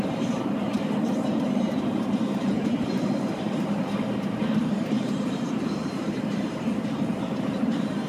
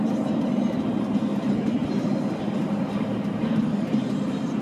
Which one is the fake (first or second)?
first